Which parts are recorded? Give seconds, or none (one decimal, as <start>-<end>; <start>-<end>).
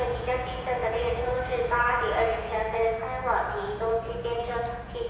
3.0-3.8